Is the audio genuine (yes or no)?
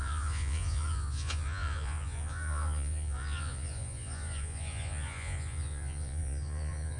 no